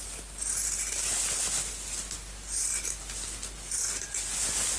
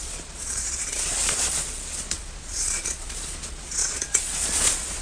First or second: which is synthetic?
second